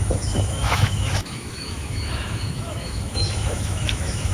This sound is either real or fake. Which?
fake